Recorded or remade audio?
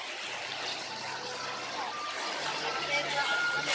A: recorded